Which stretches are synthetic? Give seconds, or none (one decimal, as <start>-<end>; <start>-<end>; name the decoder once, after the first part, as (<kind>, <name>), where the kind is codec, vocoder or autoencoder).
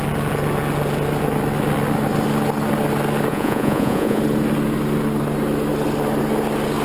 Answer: 3.3-4.2 (vocoder, Vocos)